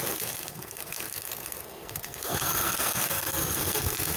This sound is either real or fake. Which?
fake